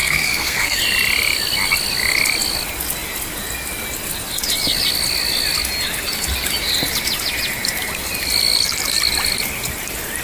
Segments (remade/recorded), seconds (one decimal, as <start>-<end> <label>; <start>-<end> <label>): 0.0-0.8 remade; 0.8-10.2 recorded